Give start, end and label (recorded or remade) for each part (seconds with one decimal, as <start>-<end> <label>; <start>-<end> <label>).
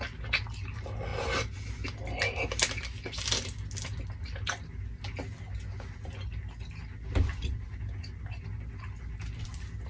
0.0-9.9 recorded